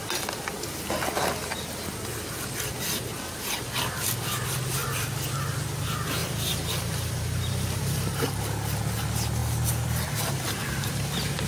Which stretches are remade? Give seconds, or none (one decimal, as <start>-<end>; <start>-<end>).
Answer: 6.2-8.4